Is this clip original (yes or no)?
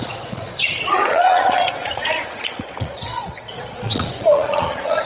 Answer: no